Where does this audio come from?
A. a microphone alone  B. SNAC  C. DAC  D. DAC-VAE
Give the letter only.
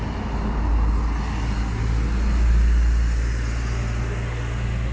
A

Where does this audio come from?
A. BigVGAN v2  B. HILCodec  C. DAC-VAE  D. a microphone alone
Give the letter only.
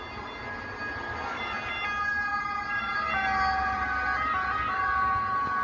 D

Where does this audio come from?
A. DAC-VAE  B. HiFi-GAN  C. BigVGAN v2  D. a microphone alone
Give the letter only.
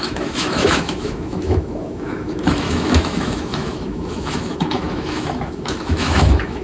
A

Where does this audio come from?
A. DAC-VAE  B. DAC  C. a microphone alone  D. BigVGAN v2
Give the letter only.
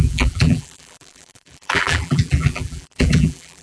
D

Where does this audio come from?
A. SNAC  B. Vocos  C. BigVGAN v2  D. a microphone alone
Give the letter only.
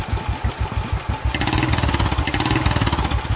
D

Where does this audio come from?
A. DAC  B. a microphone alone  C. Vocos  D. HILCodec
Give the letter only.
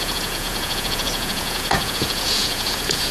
C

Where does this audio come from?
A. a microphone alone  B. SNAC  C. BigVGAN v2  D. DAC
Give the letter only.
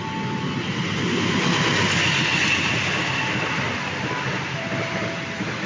A